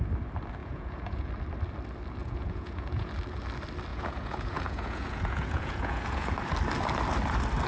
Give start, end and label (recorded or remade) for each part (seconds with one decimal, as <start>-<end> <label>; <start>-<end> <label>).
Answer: 0.0-0.6 recorded; 0.6-1.3 remade; 1.3-2.2 recorded; 2.2-3.1 remade; 3.1-3.9 recorded; 3.9-6.3 remade; 6.3-7.7 recorded